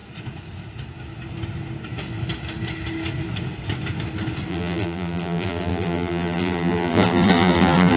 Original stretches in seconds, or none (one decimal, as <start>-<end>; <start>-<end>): 0.0-4.5

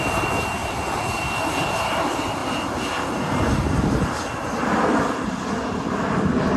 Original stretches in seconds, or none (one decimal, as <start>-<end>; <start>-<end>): 0.6-1.6; 2.4-4.6

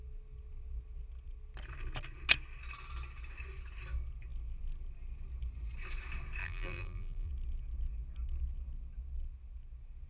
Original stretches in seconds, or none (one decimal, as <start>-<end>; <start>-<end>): 0.0-6.4; 7.3-10.1